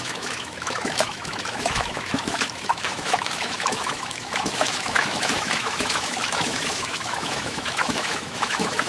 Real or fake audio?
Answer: fake